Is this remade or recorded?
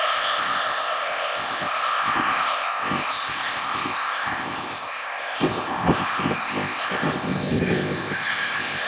remade